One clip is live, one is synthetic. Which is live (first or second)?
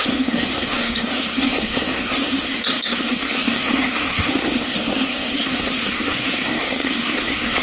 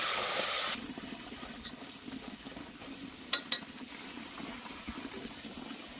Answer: second